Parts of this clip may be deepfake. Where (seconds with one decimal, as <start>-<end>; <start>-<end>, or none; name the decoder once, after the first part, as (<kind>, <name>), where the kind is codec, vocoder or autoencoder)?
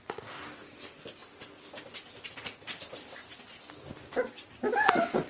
none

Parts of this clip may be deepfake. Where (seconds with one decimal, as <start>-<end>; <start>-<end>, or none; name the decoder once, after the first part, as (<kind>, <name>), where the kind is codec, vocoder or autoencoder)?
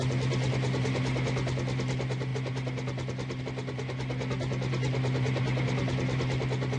none